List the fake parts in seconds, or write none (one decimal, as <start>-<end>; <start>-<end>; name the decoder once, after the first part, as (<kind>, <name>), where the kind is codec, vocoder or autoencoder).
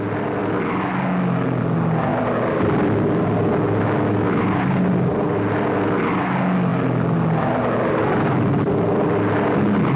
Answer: none